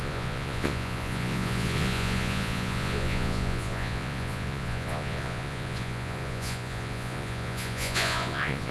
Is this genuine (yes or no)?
no